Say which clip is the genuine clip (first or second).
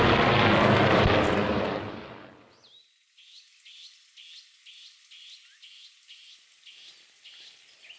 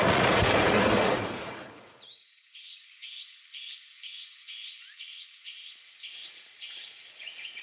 first